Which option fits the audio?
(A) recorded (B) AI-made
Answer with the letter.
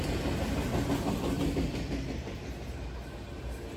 A